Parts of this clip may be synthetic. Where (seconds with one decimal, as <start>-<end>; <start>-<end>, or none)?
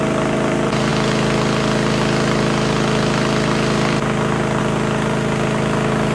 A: none